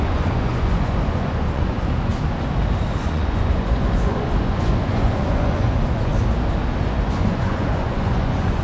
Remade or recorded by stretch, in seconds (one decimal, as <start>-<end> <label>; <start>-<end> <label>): 0.0-2.1 remade; 2.1-3.0 recorded; 3.0-6.1 remade; 6.1-6.8 recorded; 6.8-8.6 remade